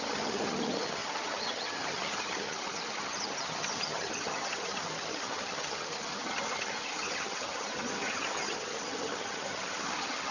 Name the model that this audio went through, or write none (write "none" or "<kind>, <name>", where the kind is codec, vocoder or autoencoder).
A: vocoder, HiFi-GAN